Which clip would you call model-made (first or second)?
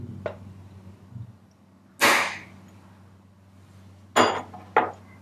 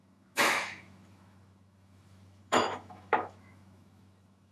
second